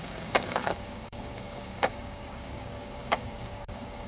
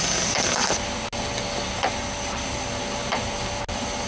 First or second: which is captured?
second